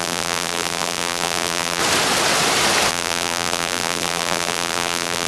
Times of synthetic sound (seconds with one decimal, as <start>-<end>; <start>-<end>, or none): 0.0-1.8; 2.9-5.3